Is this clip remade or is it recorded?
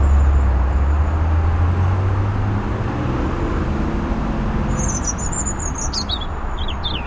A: recorded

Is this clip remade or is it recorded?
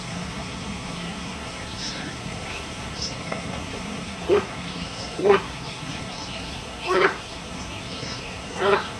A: remade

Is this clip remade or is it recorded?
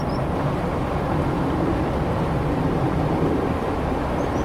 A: recorded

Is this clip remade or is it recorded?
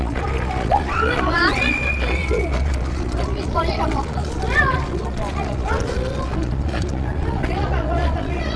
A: remade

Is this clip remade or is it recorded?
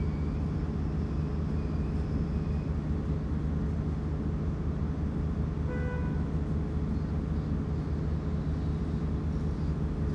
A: recorded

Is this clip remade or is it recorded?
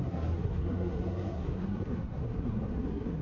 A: remade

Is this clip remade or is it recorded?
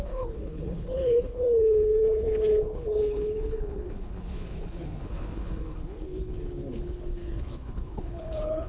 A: remade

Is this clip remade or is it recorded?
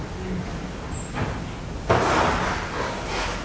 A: recorded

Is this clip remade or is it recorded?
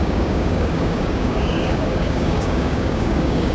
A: remade